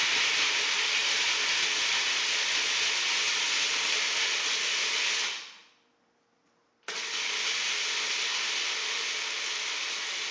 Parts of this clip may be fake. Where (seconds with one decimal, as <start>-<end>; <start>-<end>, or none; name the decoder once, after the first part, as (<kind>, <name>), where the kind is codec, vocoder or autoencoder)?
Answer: none